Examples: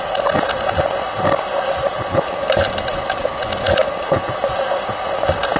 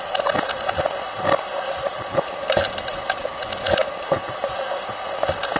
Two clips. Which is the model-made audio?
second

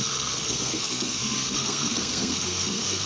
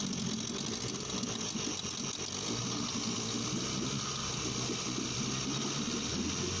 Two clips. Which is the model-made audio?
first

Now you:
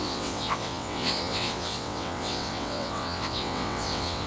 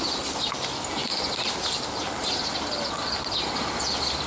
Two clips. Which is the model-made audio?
first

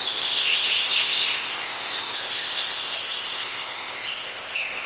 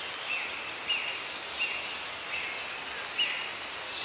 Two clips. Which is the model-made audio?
first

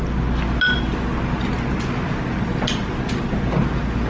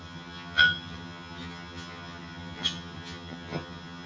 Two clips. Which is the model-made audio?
second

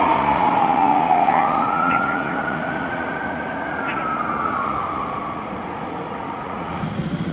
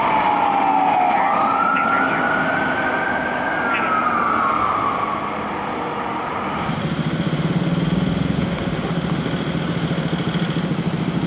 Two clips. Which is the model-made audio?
first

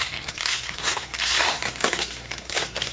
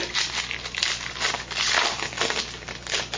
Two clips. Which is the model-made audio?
first